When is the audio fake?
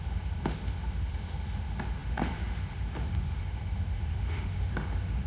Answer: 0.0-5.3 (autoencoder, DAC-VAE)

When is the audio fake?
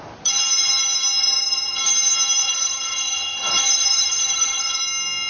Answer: 1.2-1.8 (vocoder, HiFi-GAN); 2.4-4.8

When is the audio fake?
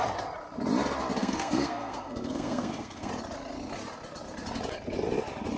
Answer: 1.2-3.1 (codec, SNAC)